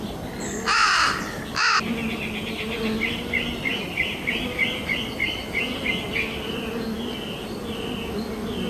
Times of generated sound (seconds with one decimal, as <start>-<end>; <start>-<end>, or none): none